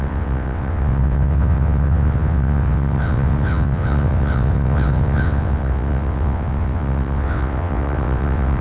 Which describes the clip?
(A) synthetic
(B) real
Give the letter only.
A